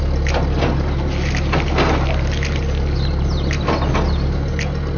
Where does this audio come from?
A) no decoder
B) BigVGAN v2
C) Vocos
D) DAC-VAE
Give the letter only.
A